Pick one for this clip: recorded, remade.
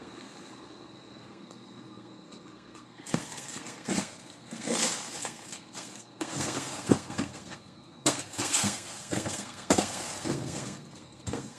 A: remade